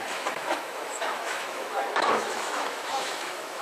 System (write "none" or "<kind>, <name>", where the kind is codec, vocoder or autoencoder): autoencoder, DAC-VAE